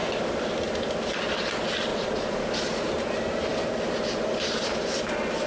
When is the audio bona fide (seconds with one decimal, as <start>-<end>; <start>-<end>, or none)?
0.0-1.9; 2.5-5.5